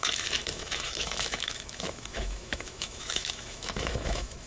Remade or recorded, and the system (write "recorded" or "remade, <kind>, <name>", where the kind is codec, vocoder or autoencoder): remade, autoencoder, DAC-VAE